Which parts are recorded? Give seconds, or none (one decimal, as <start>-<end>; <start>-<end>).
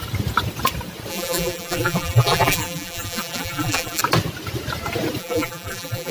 0.0-1.1; 4.0-5.2